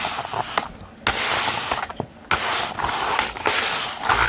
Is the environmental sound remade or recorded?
recorded